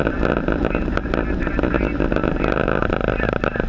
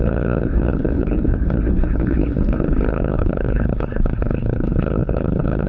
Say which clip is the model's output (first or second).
second